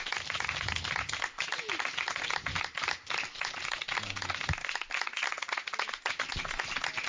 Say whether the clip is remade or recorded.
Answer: recorded